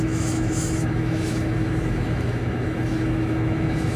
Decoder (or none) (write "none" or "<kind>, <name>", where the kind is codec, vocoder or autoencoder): autoencoder, DAC-VAE